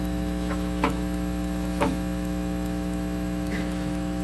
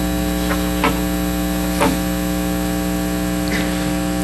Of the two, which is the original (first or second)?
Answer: second